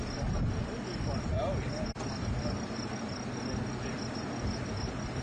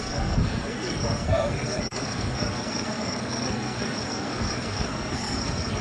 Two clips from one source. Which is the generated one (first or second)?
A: second